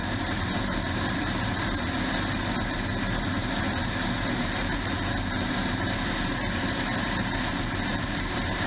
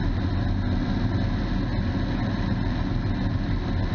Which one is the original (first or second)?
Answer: second